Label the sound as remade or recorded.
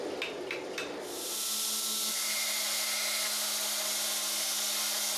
recorded